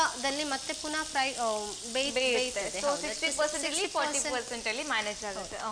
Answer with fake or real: real